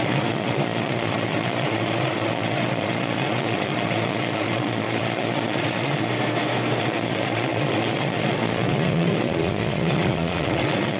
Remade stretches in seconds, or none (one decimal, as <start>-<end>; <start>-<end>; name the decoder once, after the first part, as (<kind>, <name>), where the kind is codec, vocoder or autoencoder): 0.0-6.1 (vocoder, Vocos); 6.8-11.0